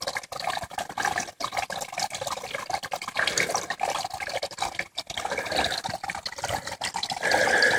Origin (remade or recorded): recorded